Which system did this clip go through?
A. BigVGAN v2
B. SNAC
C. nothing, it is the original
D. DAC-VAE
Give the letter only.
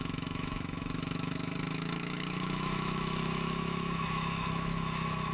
D